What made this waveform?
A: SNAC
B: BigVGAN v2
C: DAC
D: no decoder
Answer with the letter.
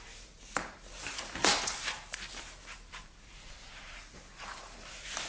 B